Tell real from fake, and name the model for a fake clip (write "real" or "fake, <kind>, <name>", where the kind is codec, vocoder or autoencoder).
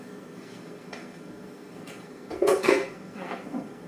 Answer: fake, codec, SNAC